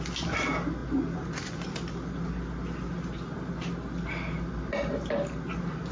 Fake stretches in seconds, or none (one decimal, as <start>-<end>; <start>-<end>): none